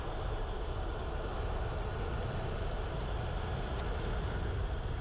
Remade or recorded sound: recorded